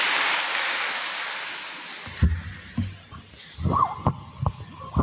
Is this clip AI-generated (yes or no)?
no